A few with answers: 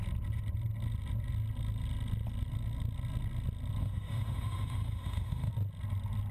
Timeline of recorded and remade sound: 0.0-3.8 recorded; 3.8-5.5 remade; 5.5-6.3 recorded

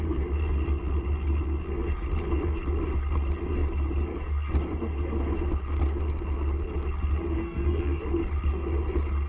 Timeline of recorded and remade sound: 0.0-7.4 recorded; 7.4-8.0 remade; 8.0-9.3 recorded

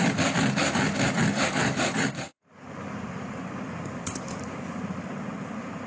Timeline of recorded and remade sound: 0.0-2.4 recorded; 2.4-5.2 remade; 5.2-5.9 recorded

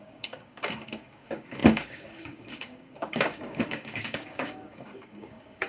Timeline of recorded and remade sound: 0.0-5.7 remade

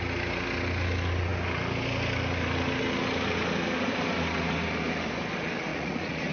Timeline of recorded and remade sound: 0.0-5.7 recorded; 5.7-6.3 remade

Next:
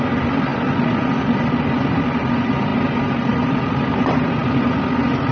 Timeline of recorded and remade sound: 0.0-5.3 recorded

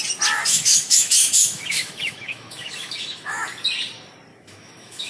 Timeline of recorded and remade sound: 0.0-0.4 recorded; 0.4-3.4 remade; 3.4-4.3 recorded; 4.3-5.1 remade

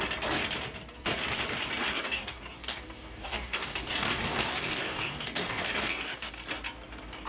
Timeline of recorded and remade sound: 0.0-1.9 recorded; 1.9-6.3 remade; 6.3-7.3 recorded